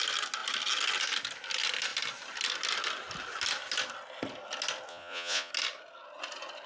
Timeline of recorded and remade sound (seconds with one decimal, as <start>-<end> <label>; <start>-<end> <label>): 0.0-4.9 recorded; 4.9-5.5 remade; 5.5-6.7 recorded